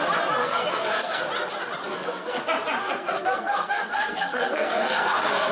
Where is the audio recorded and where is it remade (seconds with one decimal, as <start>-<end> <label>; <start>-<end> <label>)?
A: 0.0-0.4 recorded; 0.4-1.2 remade; 1.2-1.8 recorded; 1.8-2.4 remade; 2.4-2.8 recorded; 2.8-5.5 remade